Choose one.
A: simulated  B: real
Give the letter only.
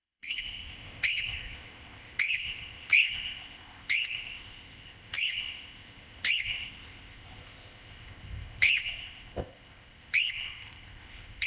A